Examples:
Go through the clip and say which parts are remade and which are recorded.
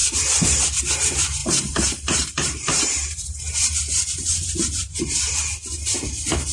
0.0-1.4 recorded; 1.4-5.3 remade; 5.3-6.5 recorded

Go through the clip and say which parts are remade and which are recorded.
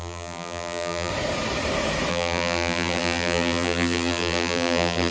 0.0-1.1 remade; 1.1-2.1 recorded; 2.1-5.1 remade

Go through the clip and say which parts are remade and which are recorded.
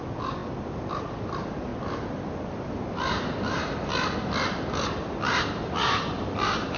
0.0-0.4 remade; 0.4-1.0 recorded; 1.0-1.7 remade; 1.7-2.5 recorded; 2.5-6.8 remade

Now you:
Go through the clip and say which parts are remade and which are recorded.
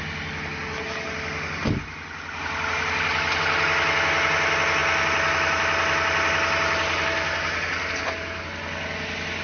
0.0-9.4 recorded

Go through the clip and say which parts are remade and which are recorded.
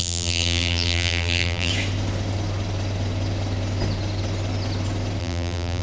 0.0-1.7 remade; 1.7-5.2 recorded; 5.2-5.8 remade